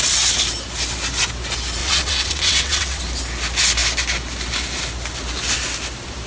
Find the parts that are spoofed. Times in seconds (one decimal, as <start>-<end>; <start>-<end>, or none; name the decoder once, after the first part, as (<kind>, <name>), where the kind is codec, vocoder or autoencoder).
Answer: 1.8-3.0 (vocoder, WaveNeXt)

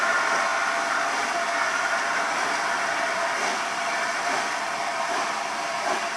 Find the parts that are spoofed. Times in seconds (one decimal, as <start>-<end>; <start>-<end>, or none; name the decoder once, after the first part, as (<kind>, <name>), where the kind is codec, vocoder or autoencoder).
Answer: none

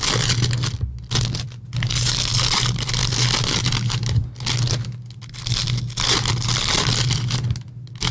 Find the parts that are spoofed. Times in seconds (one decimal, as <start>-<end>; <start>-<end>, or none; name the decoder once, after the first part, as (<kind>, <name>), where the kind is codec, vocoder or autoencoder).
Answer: none

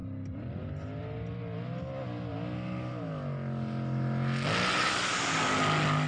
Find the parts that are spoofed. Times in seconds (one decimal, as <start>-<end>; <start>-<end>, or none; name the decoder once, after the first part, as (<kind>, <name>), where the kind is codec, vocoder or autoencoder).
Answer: none

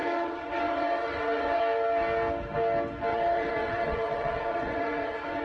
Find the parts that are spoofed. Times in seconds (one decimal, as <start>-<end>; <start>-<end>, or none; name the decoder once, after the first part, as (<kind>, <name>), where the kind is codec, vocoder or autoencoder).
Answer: 0.0-1.6 (vocoder, WaveNeXt); 3.1-5.4

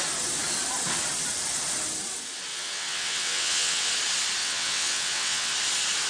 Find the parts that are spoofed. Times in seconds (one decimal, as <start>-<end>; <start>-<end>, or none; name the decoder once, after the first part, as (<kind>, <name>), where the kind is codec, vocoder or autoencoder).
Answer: 2.5-3.9 (vocoder, WaveNeXt); 4.4-5.5